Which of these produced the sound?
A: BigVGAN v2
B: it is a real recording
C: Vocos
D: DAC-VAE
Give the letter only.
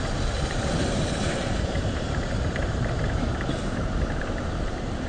A